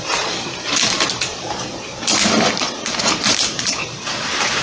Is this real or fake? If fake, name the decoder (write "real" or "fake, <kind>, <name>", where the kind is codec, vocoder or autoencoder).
fake, vocoder, BigVGAN v2